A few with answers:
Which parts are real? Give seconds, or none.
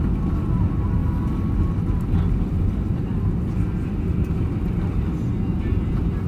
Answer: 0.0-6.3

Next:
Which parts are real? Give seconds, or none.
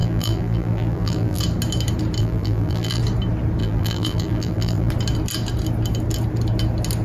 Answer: 1.4-2.2; 3.0-3.6; 4.9-7.0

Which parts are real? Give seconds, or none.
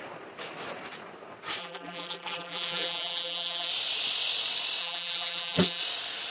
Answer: 0.0-1.6; 3.7-4.8; 5.8-6.3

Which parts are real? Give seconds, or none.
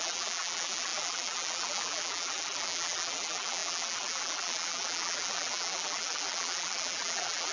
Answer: none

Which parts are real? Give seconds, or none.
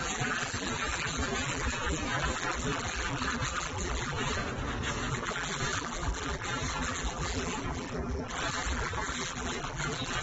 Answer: 4.4-5.1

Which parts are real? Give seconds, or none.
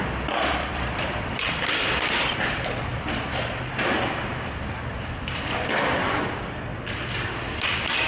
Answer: 6.7-7.5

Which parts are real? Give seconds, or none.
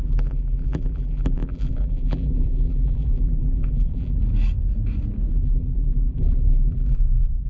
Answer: 4.2-5.3